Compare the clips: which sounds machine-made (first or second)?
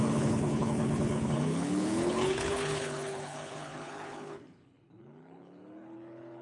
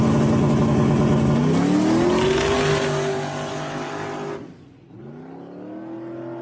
first